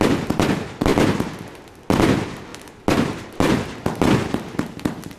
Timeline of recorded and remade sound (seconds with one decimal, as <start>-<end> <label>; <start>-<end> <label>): 0.0-5.2 recorded